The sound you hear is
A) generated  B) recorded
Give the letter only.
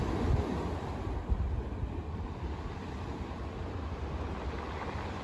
B